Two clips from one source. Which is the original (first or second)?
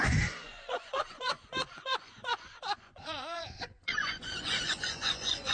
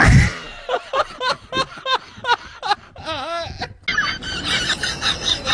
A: second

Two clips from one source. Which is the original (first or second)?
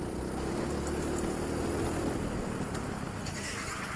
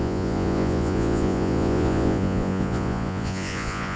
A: first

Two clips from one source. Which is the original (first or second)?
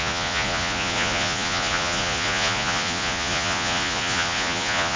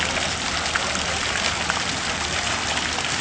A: second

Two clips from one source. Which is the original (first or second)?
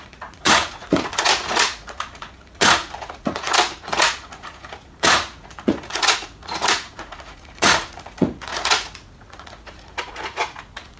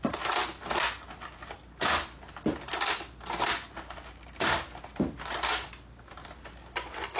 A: second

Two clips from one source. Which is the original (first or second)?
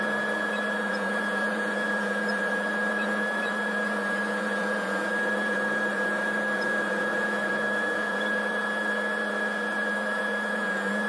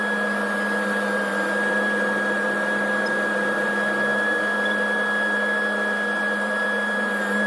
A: second